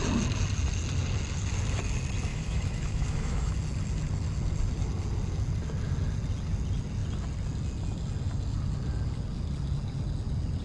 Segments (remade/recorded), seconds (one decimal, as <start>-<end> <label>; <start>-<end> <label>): 0.0-2.3 recorded; 2.3-3.5 remade; 3.5-10.6 recorded